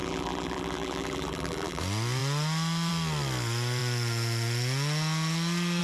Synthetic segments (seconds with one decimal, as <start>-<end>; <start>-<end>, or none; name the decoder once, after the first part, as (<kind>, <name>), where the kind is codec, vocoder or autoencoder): 0.0-1.8 (vocoder, BigVGAN v2)